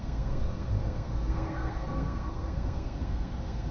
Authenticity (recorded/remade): remade